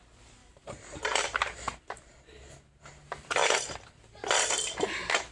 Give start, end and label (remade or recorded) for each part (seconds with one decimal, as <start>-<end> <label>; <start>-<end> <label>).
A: 0.0-0.4 recorded; 0.4-3.6 remade; 3.6-5.3 recorded